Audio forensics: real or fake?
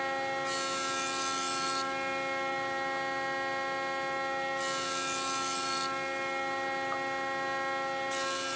real